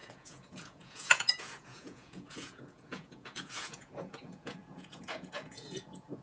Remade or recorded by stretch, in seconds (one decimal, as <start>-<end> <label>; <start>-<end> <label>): 0.0-6.2 remade